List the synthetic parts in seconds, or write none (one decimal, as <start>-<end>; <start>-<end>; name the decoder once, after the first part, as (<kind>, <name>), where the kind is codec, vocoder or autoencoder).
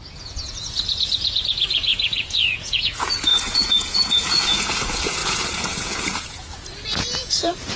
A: 0.0-7.8 (vocoder, Vocos)